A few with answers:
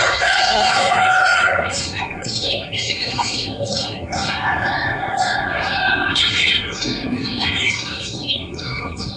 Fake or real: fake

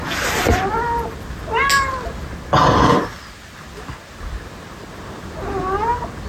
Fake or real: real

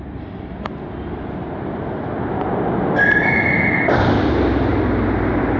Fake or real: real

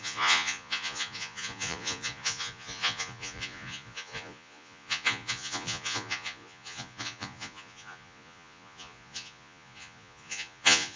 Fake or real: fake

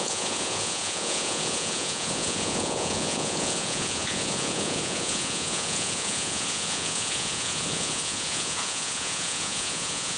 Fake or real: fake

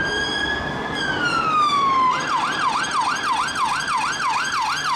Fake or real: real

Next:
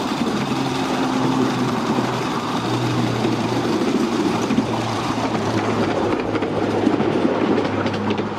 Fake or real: fake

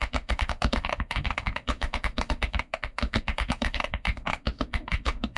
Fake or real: fake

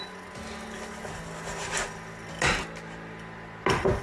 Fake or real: real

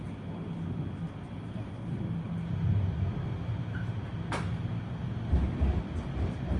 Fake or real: real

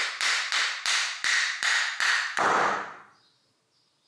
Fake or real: real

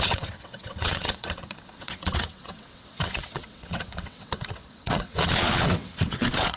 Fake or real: fake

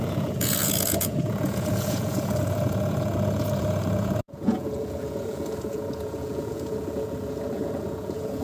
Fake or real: fake